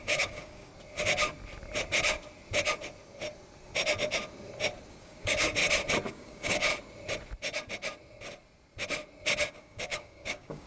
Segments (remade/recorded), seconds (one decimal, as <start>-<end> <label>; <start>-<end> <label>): 0.0-0.7 remade; 0.7-4.9 recorded; 4.9-5.6 remade; 5.6-6.1 recorded; 6.1-6.7 remade; 6.7-9.5 recorded; 9.5-10.7 remade